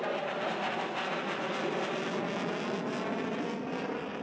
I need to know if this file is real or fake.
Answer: real